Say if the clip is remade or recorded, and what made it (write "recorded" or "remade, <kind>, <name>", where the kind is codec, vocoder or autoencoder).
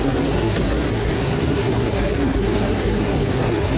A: remade, codec, SNAC